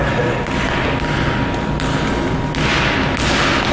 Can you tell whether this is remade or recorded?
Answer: recorded